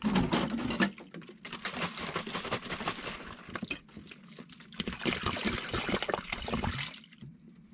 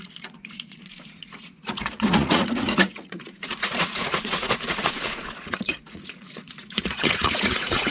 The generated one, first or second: second